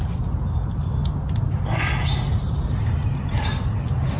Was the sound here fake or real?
real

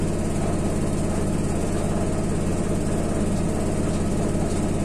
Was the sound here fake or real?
real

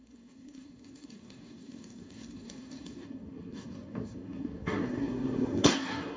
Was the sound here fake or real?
fake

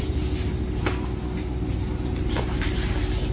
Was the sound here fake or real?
real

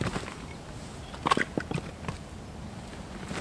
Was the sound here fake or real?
real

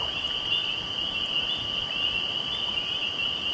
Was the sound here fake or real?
real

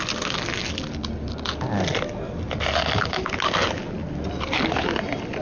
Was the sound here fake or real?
real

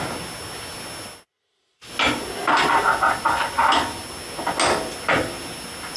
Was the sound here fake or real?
real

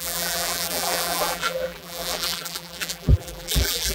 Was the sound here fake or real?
fake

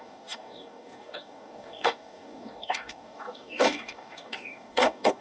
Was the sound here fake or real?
fake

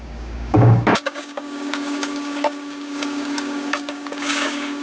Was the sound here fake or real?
fake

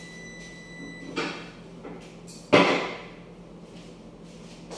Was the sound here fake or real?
real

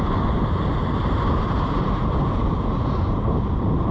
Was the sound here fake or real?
fake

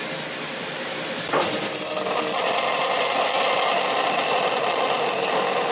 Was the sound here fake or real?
real